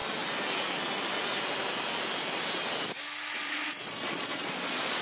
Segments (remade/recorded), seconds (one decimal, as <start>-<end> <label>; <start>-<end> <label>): 0.0-3.4 recorded; 3.4-5.0 remade